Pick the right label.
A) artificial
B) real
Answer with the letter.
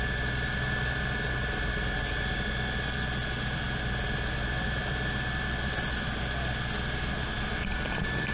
B